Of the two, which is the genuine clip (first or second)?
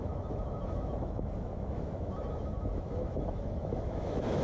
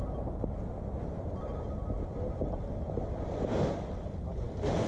second